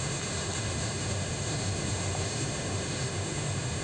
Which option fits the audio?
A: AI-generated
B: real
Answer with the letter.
A